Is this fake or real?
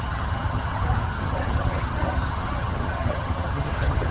fake